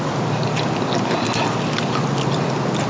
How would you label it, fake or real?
real